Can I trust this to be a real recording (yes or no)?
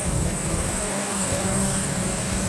no